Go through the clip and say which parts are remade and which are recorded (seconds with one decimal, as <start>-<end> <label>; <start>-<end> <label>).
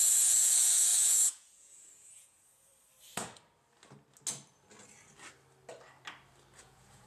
0.0-2.7 remade; 2.7-6.6 recorded; 6.6-7.1 remade